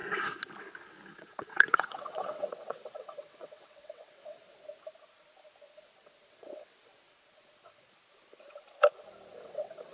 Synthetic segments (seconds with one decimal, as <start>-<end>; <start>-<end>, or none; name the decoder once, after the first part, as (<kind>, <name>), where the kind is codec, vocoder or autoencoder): 1.1-4.4 (vocoder, WaveNeXt); 6.3-6.9; 9.3-9.9

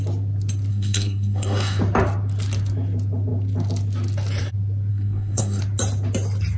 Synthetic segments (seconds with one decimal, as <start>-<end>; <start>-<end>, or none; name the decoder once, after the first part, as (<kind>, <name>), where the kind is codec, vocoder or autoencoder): 0.7-1.8 (codec, SNAC); 4.9-5.6

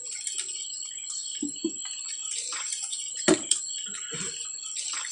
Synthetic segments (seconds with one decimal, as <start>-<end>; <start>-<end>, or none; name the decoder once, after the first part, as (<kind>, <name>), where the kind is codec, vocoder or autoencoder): 2.2-3.6 (vocoder, BigVGAN v2)

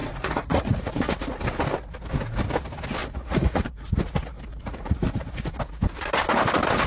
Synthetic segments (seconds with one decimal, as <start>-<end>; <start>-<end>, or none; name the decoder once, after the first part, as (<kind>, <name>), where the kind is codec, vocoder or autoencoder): 0.0-1.4 (vocoder, Vocos); 3.0-4.0; 4.5-5.6

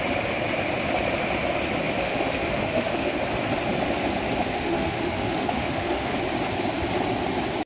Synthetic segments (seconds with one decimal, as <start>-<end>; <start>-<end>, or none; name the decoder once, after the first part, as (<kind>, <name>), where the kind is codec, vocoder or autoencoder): 2.0-3.2 (autoencoder, DAC-VAE); 4.4-6.1

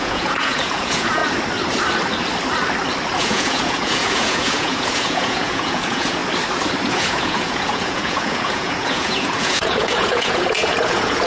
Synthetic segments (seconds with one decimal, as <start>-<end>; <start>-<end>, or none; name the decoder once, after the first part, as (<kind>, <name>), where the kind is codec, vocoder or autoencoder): 0.0-1.2 (vocoder, Vocos); 3.2-6.2; 6.9-11.3

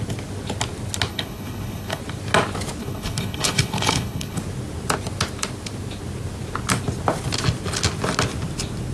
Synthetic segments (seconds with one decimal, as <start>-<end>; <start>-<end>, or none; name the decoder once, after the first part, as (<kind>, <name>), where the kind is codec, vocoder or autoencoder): 1.1-2.0 (codec, HILCodec); 2.8-4.4